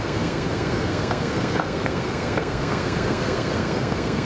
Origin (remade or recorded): remade